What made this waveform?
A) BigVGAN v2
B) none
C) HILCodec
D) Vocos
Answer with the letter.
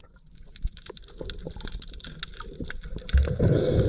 A